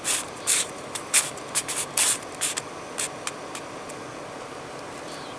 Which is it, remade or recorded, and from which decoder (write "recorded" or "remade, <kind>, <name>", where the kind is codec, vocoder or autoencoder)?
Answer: recorded